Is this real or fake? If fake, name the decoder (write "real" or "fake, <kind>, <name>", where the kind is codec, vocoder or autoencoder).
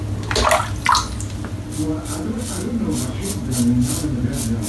real